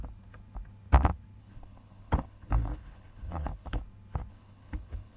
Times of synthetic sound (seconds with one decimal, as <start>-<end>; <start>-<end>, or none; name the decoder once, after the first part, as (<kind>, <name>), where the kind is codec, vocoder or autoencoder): 1.4-3.8 (codec, HILCodec); 4.3-5.2